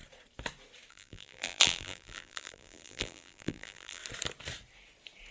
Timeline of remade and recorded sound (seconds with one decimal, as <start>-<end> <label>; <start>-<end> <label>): 0.0-0.9 recorded; 0.9-4.0 remade; 4.0-5.3 recorded